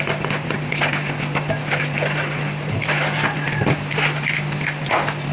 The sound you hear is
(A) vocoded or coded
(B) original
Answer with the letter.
B